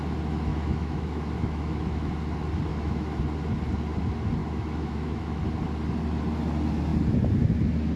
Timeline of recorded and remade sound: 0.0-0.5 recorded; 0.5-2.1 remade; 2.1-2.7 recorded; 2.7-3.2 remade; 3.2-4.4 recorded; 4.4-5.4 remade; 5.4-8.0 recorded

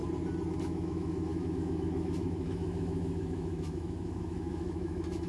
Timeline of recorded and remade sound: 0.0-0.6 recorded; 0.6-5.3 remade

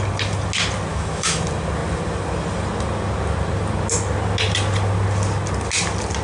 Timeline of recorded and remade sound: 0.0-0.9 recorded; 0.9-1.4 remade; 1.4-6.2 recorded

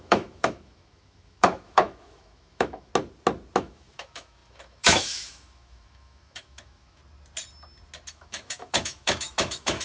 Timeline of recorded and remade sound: 0.0-2.9 remade; 2.9-3.6 recorded; 3.6-7.0 remade; 7.0-8.1 recorded; 8.1-9.8 remade